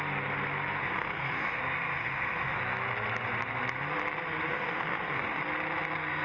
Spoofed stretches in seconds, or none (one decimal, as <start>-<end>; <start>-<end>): 0.8-1.6; 2.0-2.6; 4.5-5.4